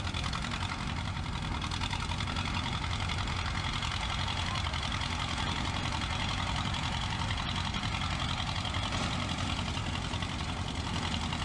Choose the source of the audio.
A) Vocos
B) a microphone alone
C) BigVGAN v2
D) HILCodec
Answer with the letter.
B